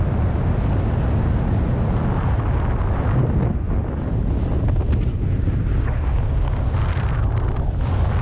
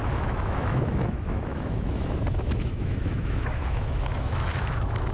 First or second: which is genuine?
first